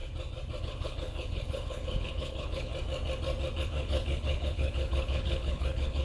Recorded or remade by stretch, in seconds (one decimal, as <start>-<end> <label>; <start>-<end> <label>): 0.0-0.6 recorded; 0.6-2.7 remade; 2.7-3.6 recorded; 3.6-6.0 remade